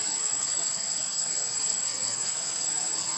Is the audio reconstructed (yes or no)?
yes